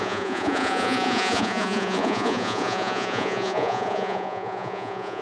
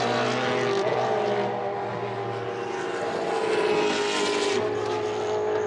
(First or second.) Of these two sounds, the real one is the second